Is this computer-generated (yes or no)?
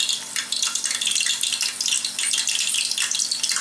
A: no